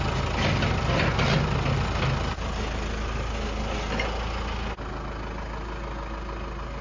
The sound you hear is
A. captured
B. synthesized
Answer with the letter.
A